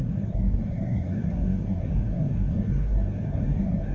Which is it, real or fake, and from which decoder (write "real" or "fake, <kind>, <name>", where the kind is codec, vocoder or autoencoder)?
fake, codec, SNAC